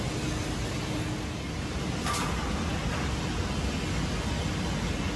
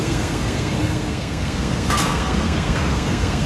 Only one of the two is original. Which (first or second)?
first